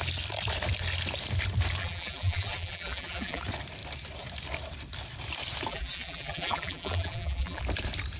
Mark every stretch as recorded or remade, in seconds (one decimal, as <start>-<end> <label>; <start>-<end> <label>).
0.0-1.8 recorded; 1.8-3.4 remade; 3.4-5.7 recorded; 5.7-7.6 remade; 7.6-8.2 recorded